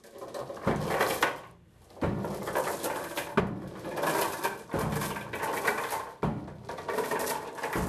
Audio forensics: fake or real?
real